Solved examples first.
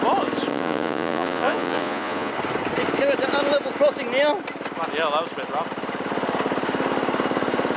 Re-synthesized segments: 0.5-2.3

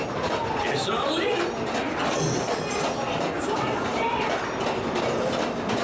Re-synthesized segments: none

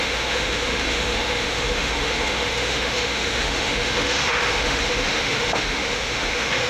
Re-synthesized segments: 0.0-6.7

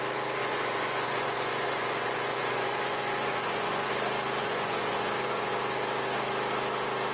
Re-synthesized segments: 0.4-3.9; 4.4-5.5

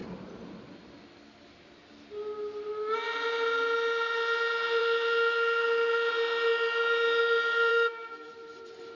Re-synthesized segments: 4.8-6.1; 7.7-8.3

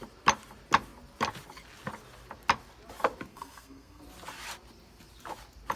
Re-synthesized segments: 3.3-4.0